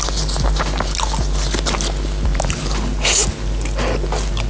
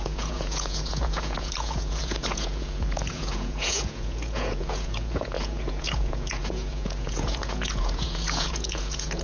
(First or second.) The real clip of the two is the first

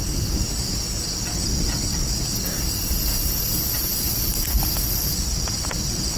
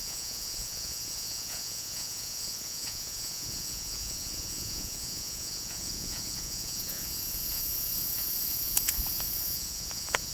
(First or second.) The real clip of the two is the first